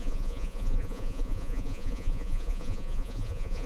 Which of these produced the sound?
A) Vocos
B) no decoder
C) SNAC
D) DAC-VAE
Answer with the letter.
A